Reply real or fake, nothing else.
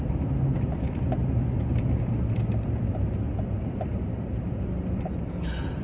fake